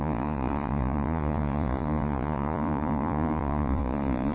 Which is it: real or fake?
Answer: fake